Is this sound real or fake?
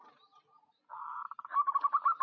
fake